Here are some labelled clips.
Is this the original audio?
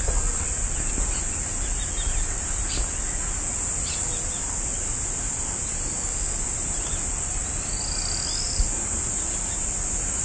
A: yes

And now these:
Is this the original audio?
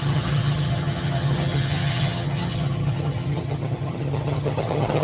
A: no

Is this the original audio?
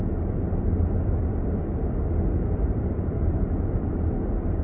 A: yes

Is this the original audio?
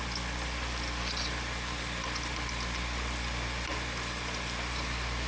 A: yes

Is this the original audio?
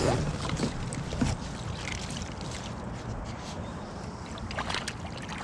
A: yes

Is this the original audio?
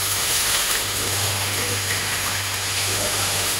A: no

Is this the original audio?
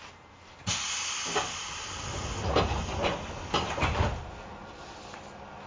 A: yes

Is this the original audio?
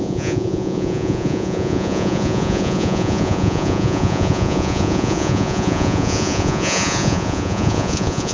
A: no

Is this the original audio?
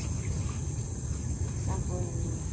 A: yes